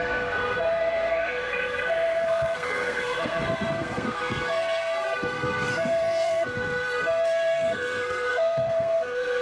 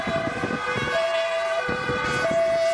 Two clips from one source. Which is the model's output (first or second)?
first